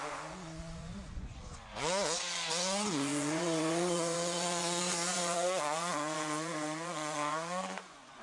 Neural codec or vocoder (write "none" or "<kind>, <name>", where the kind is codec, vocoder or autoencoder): vocoder, Vocos